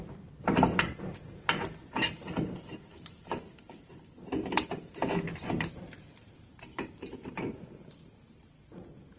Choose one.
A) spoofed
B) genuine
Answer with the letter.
A